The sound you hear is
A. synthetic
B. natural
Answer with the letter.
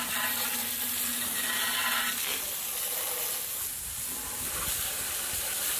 B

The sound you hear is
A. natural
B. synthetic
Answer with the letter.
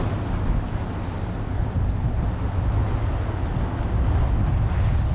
A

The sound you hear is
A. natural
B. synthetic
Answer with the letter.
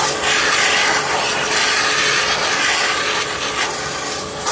A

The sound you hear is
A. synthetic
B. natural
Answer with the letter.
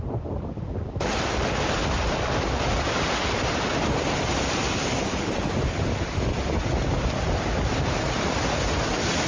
B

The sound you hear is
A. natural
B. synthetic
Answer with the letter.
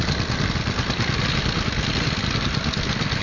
A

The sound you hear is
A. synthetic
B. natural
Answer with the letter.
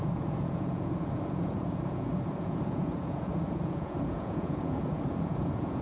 A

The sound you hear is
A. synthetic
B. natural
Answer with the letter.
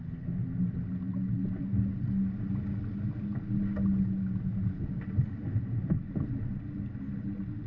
B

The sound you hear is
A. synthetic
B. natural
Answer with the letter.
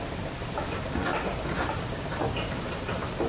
B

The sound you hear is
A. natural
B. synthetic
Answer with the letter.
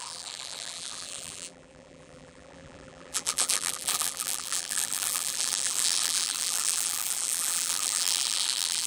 B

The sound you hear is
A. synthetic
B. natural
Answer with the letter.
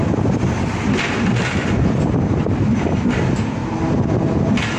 B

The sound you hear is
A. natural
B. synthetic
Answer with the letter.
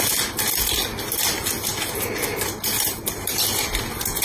A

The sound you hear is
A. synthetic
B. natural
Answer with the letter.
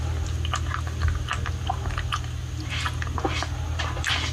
B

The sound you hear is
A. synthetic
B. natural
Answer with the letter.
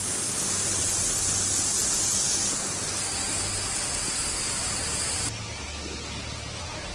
B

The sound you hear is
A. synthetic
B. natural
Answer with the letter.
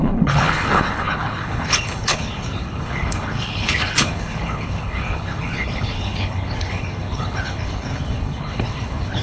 A